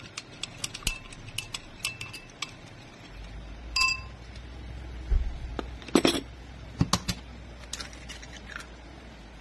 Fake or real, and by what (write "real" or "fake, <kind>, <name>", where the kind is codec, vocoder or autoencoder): real